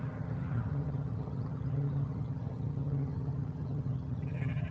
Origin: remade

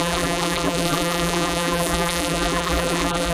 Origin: remade